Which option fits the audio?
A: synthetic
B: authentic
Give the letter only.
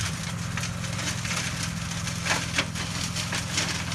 B